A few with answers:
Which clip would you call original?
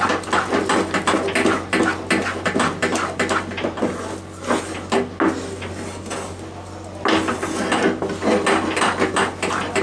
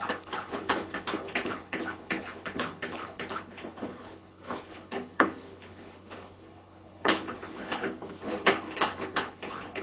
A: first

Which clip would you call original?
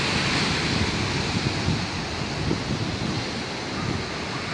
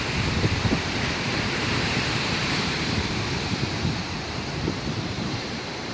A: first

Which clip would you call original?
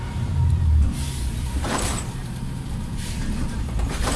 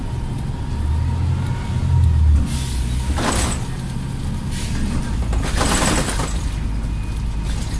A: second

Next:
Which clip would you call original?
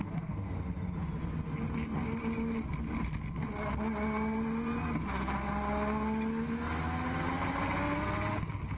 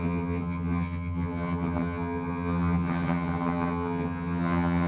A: first